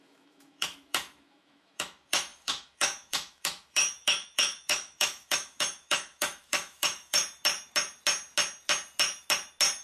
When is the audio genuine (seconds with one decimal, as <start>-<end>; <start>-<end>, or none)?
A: 7.2-9.8